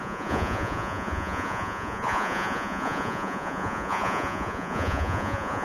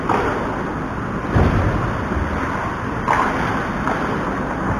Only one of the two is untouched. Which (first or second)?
second